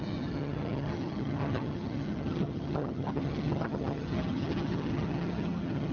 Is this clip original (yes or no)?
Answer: no